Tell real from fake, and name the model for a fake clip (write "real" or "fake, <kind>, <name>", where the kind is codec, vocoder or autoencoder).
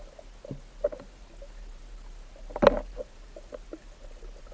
real